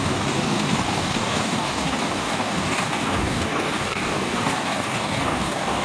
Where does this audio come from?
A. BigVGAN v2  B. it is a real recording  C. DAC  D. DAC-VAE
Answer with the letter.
C